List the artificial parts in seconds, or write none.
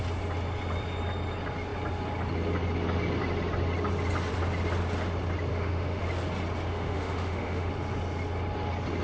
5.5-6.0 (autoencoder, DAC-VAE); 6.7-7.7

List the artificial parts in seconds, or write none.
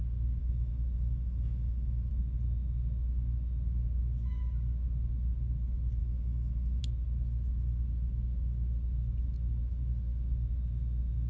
0.4-2.1 (autoencoder, DAC-VAE); 6.0-6.8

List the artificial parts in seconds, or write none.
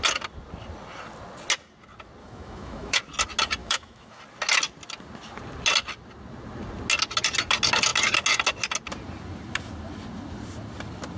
2.2-3.0 (autoencoder, DAC-VAE); 3.6-4.2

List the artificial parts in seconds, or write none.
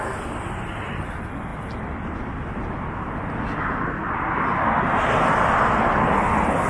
none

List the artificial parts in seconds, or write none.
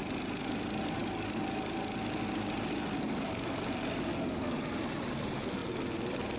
none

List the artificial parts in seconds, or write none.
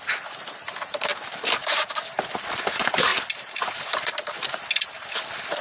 none